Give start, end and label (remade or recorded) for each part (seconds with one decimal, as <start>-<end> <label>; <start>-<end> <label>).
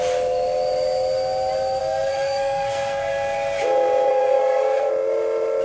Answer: 0.0-1.8 recorded; 1.8-3.1 remade; 3.1-4.1 recorded; 4.1-4.9 remade; 4.9-5.6 recorded